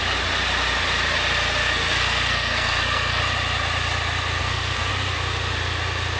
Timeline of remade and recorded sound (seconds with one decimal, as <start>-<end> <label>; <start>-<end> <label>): 0.0-1.6 recorded; 1.6-3.2 remade; 3.2-4.4 recorded; 4.4-4.9 remade; 4.9-6.2 recorded